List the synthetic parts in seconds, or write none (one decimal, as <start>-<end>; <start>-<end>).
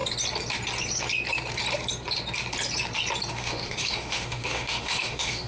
3.3-5.5